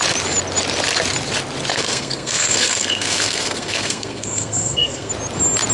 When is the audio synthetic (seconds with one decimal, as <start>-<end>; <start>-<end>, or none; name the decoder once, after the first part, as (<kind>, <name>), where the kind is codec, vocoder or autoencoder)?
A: 1.7-5.1 (codec, SNAC)